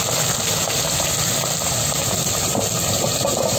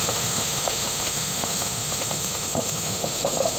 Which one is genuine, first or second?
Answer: first